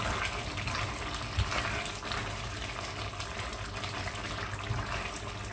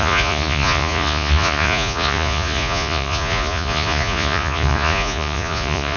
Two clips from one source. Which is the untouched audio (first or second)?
first